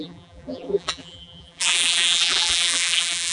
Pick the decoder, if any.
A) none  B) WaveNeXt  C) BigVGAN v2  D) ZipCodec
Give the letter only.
C